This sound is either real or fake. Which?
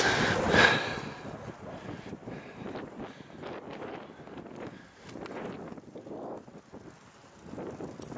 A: real